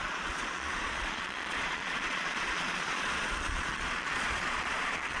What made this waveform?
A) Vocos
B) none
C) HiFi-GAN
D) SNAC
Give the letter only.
A